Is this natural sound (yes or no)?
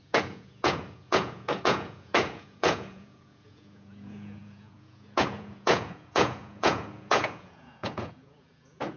no